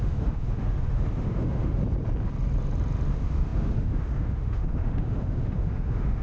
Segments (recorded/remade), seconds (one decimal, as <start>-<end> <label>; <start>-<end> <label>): 0.0-1.8 remade; 1.8-3.1 recorded; 3.1-6.2 remade